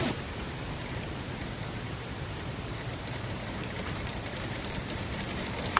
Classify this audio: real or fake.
fake